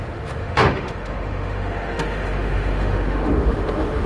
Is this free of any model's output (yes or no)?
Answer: no